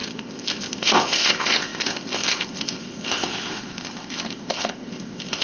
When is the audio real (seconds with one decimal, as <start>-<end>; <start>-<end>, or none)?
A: none